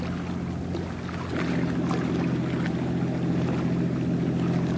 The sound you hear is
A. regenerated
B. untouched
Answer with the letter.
B